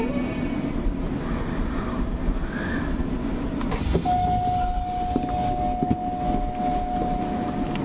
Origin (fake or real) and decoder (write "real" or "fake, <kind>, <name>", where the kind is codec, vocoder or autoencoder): real